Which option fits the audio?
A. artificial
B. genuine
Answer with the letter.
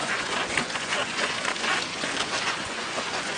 A